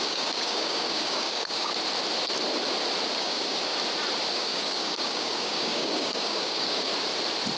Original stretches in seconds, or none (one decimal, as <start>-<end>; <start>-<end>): 1.7-3.2; 3.7-4.3; 6.9-7.6